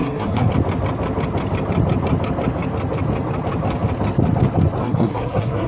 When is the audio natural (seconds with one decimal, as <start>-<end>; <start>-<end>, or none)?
0.5-4.8